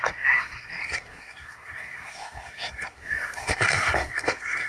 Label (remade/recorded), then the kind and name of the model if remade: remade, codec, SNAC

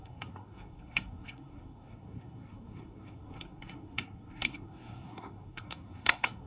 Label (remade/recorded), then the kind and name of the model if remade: remade, codec, SNAC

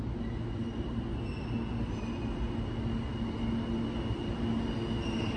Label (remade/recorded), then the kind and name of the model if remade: recorded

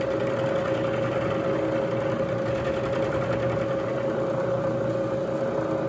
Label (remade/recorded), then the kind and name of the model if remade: recorded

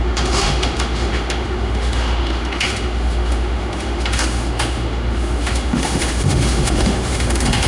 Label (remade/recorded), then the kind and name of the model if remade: remade, autoencoder, DAC-VAE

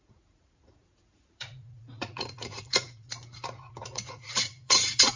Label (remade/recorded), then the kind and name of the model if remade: remade, vocoder, Vocos